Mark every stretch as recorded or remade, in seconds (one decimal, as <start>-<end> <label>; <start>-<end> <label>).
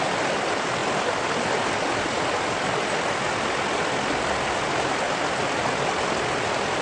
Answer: 0.0-6.8 recorded